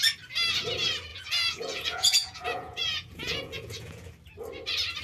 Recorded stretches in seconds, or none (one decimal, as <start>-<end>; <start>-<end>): 0.0-1.1; 4.1-5.0